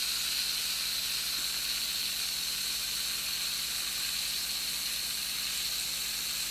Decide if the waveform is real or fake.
real